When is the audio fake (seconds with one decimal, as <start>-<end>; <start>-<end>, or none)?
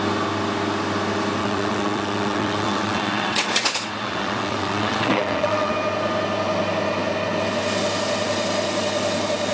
1.4-5.7